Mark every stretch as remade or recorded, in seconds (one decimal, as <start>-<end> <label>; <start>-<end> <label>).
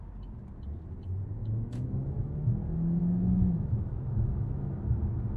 0.0-1.4 recorded; 1.4-2.5 remade; 2.5-3.0 recorded; 3.0-4.8 remade; 4.8-5.4 recorded